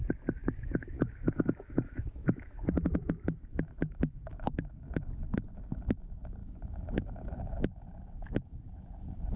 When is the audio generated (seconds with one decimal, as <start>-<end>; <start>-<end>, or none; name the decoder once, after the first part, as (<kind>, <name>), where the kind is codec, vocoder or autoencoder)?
0.4-5.1 (autoencoder, DAC-VAE); 6.4-9.4